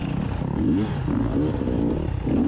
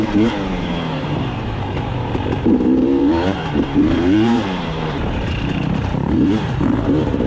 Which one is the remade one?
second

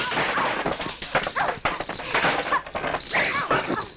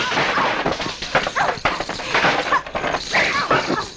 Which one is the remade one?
second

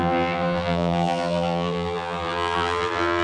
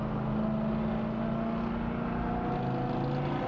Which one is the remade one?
first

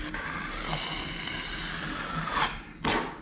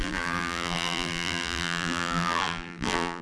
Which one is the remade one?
second